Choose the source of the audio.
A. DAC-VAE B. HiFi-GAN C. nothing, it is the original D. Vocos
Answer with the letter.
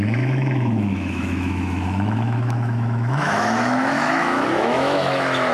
A